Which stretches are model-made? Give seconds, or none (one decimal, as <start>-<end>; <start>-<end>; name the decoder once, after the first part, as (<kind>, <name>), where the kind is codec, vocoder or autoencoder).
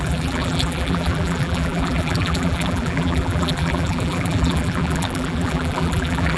0.0-6.4 (vocoder, BigVGAN v2)